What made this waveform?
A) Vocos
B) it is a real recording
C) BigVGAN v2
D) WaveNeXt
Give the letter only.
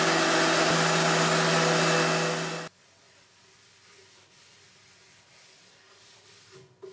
B